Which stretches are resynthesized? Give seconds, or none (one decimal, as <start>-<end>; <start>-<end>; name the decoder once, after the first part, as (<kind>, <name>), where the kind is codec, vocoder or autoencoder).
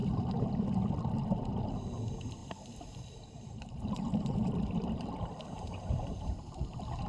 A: 0.0-0.5 (vocoder, BigVGAN v2); 2.4-7.1